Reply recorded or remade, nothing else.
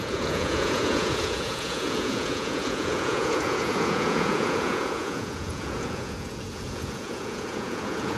remade